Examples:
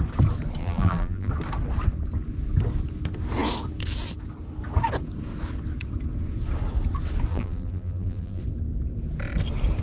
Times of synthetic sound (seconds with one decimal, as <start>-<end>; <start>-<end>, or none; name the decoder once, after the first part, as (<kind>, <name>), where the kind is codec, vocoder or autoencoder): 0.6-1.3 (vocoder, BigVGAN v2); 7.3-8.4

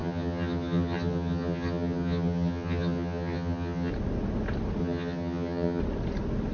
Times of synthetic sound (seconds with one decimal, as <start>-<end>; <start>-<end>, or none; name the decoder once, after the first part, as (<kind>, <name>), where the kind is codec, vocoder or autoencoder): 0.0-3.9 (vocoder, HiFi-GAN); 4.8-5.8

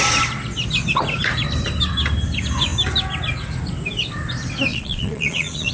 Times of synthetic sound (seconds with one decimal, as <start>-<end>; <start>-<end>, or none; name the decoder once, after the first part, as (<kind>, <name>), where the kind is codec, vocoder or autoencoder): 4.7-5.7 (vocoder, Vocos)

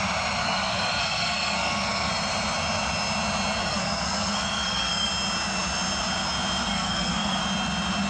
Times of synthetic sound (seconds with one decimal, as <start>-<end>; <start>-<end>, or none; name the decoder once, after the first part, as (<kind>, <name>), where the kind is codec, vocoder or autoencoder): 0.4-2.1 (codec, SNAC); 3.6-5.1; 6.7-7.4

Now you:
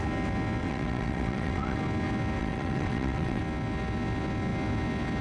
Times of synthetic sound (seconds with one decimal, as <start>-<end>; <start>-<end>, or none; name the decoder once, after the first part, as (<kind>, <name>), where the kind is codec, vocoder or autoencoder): 0.6-1.8 (vocoder, WaveNeXt); 2.4-3.4

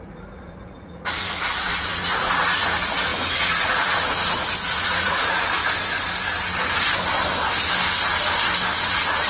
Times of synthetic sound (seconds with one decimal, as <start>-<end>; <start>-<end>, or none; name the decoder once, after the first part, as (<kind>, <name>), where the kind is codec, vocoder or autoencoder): 0.0-5.6 (vocoder, Vocos); 8.8-9.3

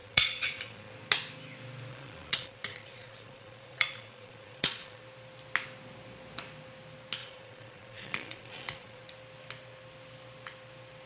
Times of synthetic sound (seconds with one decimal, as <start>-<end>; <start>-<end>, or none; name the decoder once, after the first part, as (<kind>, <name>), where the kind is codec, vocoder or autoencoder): 0.0-0.9 (vocoder, Vocos); 1.9-5.0; 7.2-9.0